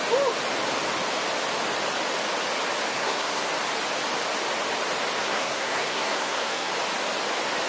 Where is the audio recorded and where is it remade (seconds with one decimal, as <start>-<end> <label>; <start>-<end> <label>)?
0.0-2.9 recorded; 2.9-3.5 remade; 3.5-5.2 recorded; 5.2-6.7 remade; 6.7-7.7 recorded